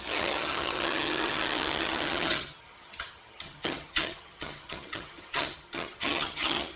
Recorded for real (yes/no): no